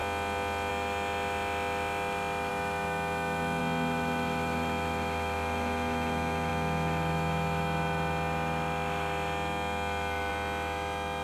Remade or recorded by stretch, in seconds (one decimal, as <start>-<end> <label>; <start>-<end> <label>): 0.0-0.7 recorded; 0.7-11.2 remade